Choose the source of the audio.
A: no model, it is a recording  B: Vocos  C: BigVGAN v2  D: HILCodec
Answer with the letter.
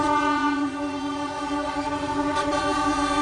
B